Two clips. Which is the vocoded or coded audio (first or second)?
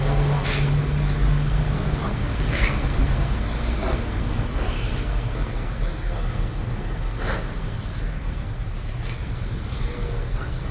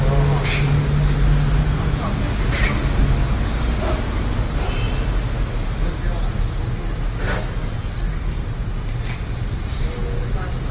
first